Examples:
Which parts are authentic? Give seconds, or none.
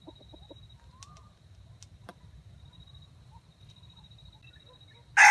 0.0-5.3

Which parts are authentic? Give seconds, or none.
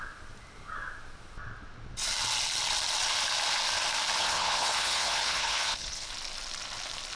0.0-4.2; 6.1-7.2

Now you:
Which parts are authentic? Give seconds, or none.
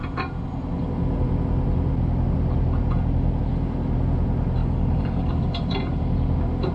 0.0-4.6; 5.3-6.7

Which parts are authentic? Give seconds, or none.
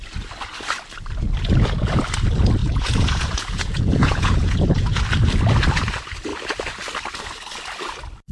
0.0-2.6; 5.0-8.3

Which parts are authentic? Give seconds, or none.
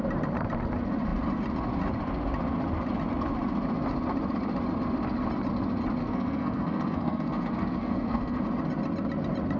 0.0-6.0; 8.4-9.6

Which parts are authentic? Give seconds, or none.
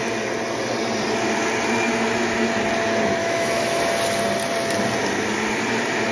0.0-3.2; 3.8-6.1